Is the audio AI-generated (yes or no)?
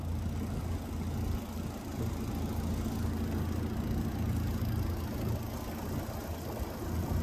no